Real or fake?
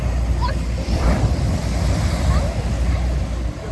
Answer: real